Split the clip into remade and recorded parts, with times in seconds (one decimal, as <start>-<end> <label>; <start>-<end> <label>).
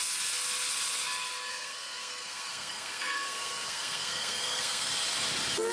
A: 0.0-1.5 recorded; 1.5-4.9 remade; 4.9-5.7 recorded